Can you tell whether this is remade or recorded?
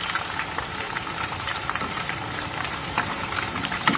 remade